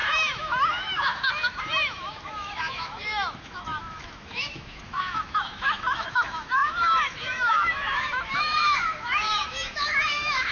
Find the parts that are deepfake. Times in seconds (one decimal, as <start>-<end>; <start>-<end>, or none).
0.0-10.5